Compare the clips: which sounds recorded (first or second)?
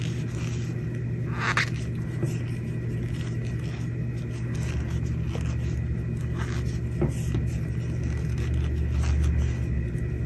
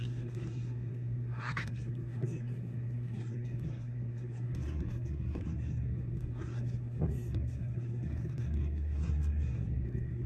first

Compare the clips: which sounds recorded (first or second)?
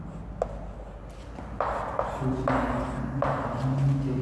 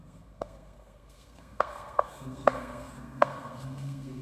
first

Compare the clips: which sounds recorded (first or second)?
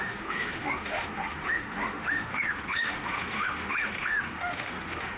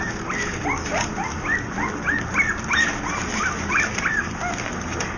second